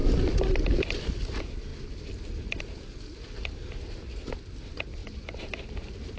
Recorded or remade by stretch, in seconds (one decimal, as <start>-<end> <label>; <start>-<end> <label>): 0.0-6.2 recorded